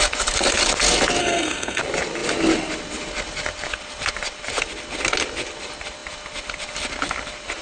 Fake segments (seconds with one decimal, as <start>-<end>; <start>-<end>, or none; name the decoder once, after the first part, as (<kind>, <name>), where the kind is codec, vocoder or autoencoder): 1.2-1.8 (codec, SNAC)